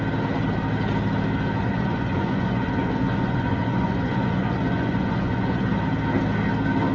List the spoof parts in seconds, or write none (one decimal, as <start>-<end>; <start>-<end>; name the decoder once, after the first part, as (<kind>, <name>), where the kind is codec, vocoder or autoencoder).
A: 1.6-5.7 (vocoder, Vocos)